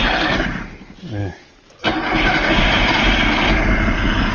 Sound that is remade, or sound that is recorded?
recorded